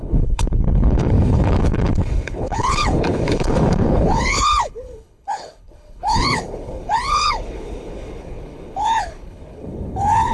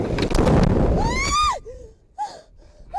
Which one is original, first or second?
second